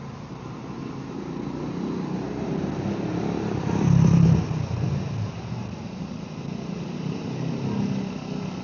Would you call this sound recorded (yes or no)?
yes